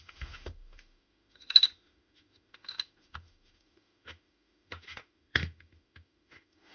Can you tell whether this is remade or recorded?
remade